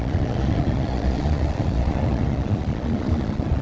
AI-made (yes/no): yes